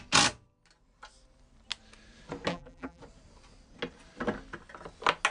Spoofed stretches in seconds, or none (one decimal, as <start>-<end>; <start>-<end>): 2.5-3.0